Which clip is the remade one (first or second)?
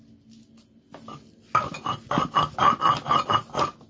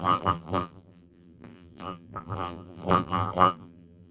second